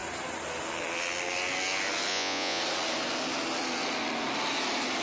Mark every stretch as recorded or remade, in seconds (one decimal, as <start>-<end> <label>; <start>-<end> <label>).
0.0-2.1 recorded; 2.1-2.6 remade; 2.6-5.0 recorded